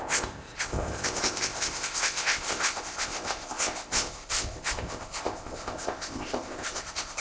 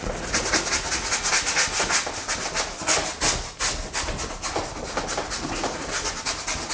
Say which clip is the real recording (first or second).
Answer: second